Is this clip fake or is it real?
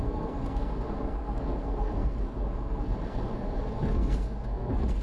fake